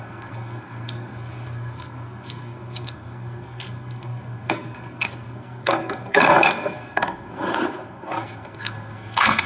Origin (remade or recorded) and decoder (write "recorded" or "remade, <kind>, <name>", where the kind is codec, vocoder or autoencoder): remade, codec, SNAC